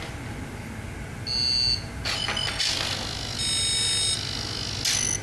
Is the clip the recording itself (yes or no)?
yes